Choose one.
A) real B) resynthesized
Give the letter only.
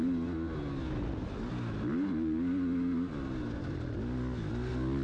A